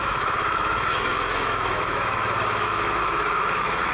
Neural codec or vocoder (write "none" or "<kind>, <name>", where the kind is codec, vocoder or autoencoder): autoencoder, DAC-VAE